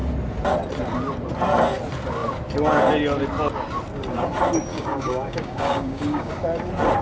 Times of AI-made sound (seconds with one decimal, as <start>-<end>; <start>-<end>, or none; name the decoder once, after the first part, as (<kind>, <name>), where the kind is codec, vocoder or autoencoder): 4.7-6.3 (codec, DAC)